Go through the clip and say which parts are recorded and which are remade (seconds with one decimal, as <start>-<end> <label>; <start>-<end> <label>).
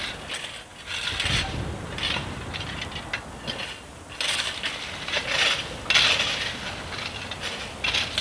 0.0-8.2 recorded